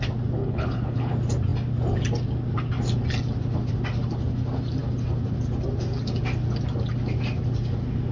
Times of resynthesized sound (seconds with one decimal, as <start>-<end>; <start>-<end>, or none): 0.4-1.1